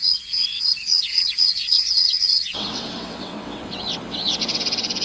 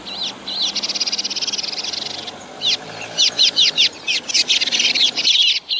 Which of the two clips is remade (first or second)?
first